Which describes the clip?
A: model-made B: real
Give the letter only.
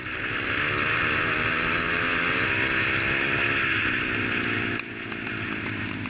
B